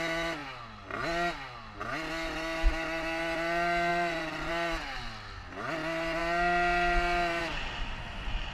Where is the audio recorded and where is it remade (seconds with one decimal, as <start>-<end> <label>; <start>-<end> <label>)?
0.0-3.9 recorded; 3.9-4.5 remade; 4.5-8.5 recorded